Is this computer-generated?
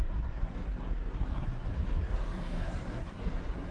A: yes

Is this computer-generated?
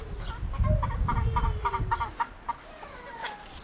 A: no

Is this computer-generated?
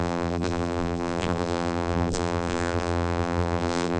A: yes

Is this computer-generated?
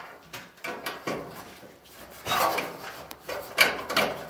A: yes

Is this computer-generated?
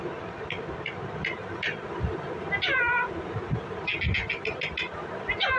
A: no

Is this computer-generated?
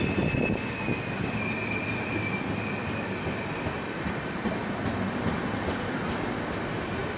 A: no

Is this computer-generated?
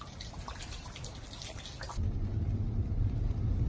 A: no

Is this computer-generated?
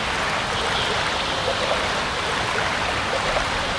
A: no